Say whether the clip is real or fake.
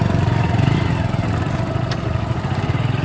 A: real